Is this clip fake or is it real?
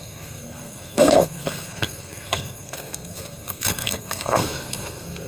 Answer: fake